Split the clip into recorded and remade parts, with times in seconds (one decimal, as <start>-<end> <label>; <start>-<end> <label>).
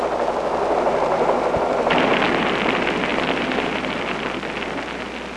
0.0-1.1 recorded; 1.1-2.1 remade; 2.1-5.4 recorded